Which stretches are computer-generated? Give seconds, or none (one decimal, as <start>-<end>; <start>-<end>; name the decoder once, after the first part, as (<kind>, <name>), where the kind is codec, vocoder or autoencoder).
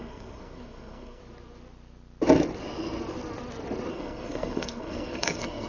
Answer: 0.0-1.2 (codec, SNAC); 3.9-5.7